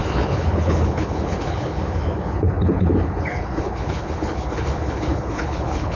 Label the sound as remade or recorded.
remade